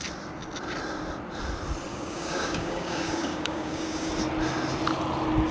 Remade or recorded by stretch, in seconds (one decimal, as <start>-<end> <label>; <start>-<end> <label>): 0.0-1.9 recorded; 1.9-4.1 remade; 4.1-5.5 recorded